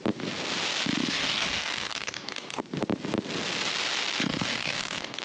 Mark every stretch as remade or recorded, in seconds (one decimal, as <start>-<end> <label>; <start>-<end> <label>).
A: 0.0-1.0 recorded; 1.0-2.6 remade; 2.6-4.2 recorded; 4.2-5.2 remade